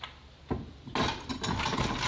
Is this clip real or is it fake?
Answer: real